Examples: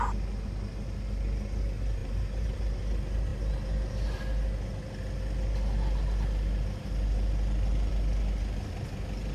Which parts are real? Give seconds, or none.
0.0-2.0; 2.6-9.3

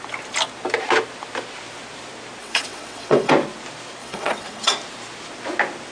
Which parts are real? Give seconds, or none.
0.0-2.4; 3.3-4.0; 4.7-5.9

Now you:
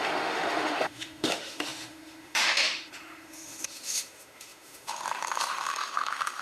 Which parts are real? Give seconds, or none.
none

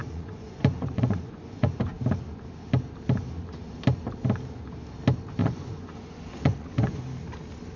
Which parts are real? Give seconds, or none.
1.8-5.4; 7.0-7.8

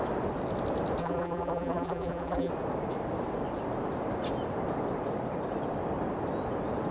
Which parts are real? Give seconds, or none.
0.0-1.0; 2.5-6.9